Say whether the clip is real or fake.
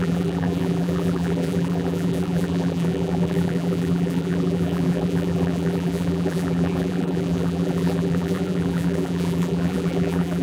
fake